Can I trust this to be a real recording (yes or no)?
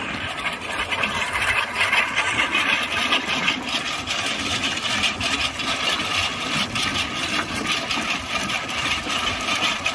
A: no